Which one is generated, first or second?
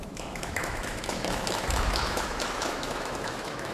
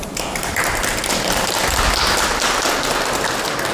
first